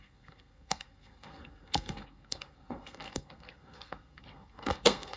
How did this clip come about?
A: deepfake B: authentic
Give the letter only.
A